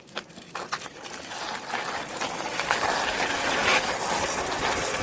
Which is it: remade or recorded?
recorded